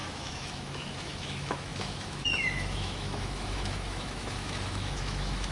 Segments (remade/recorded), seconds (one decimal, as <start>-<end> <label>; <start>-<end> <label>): 0.0-5.5 remade